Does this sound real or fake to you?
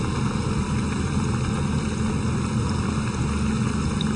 real